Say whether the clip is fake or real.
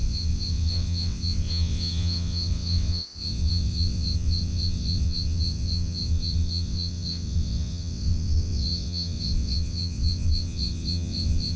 fake